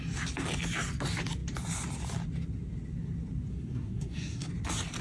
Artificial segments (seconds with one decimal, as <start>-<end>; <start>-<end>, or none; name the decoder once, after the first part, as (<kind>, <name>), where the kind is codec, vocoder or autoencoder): 3.5-4.5 (codec, SNAC)